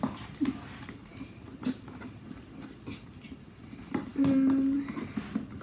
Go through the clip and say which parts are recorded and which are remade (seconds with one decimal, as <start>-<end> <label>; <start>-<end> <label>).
0.0-5.6 recorded